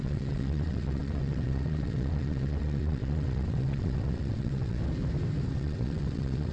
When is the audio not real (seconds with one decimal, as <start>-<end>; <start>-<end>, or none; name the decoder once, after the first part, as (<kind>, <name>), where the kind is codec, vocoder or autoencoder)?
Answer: 0.0-4.8 (vocoder, WaveNeXt); 5.5-6.5